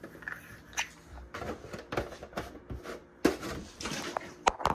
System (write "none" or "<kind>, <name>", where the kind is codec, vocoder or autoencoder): none